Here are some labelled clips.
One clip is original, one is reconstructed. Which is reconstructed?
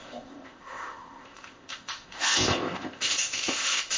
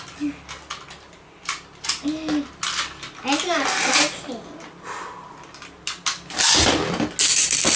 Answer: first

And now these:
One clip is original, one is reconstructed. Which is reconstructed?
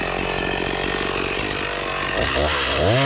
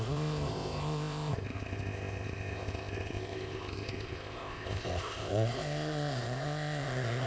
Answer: second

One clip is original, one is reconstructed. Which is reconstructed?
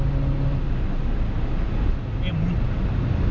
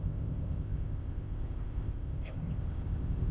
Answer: second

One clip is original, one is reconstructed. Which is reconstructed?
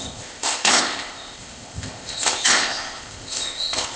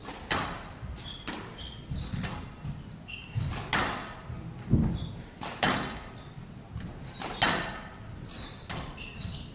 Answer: first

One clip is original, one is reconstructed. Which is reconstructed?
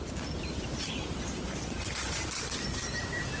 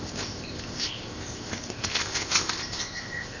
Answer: second